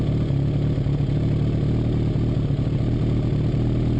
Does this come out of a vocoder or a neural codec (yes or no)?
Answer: no